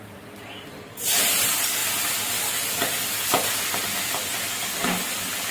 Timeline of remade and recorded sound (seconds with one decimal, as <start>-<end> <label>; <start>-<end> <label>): 0.0-5.5 recorded